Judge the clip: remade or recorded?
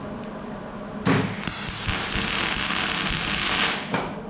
recorded